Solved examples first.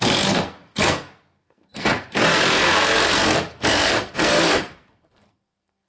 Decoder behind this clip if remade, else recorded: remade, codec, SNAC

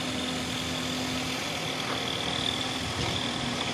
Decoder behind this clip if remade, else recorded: recorded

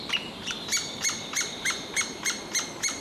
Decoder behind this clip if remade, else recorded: remade, vocoder, BigVGAN v2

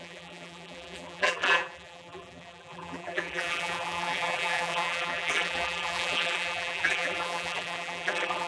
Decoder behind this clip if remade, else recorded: remade, vocoder, BigVGAN v2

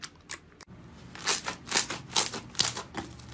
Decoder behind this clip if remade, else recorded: recorded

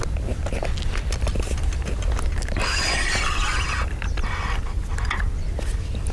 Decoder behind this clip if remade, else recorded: recorded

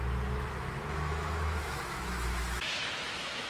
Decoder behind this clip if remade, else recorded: remade, autoencoder, DAC-VAE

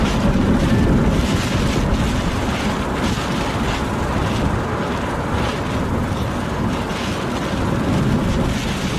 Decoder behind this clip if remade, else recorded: recorded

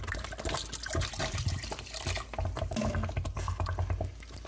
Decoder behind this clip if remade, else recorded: recorded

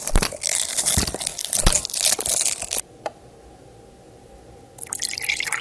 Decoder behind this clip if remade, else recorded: recorded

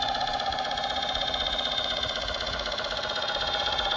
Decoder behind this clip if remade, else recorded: remade, vocoder, Vocos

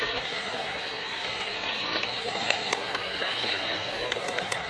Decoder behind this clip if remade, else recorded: remade, codec, SNAC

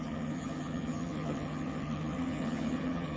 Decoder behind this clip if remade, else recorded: remade, vocoder, HiFi-GAN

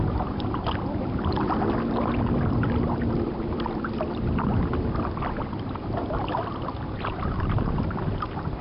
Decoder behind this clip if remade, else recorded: remade, vocoder, BigVGAN v2